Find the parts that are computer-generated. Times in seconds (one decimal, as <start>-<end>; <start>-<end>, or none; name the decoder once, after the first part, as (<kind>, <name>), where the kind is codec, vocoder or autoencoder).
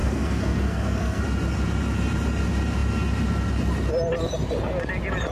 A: 0.0-1.2 (codec, SNAC)